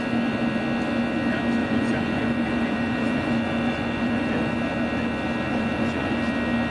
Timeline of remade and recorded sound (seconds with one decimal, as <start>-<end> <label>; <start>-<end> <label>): 0.0-1.6 recorded; 1.6-4.5 remade; 4.5-5.5 recorded; 5.5-6.2 remade; 6.2-6.7 recorded